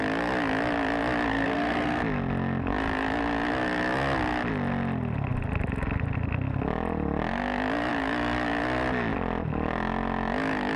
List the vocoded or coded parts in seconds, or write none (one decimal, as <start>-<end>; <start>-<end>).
1.3-2.0